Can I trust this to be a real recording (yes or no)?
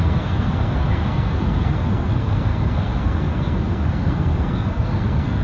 no